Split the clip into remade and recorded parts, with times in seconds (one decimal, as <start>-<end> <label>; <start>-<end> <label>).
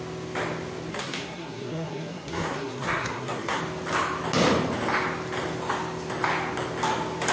0.0-0.9 recorded; 0.9-3.6 remade; 3.6-7.3 recorded